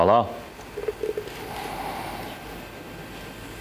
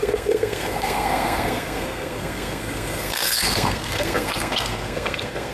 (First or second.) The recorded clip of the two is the first